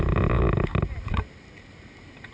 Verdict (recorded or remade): recorded